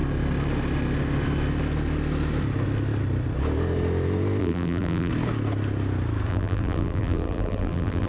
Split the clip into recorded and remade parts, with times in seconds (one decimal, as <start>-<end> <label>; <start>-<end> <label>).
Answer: 0.0-4.4 recorded; 4.4-5.1 remade; 5.1-6.3 recorded; 6.3-8.1 remade